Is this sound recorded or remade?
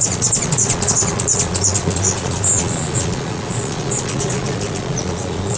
remade